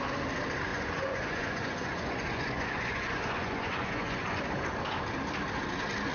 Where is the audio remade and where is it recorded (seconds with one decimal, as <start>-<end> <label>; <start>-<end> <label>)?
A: 0.0-0.7 recorded; 0.7-4.4 remade; 4.4-6.1 recorded